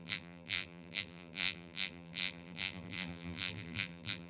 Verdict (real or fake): fake